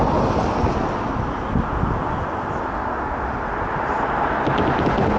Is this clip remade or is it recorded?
recorded